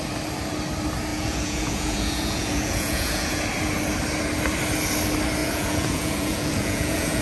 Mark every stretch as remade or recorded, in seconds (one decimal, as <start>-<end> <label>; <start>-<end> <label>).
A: 0.0-1.1 recorded; 1.1-3.3 remade; 3.3-5.4 recorded; 5.4-7.2 remade